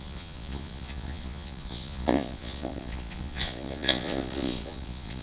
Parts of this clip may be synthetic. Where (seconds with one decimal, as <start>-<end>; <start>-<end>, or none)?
0.0-5.2